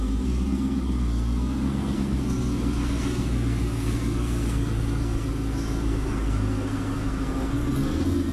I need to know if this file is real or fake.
fake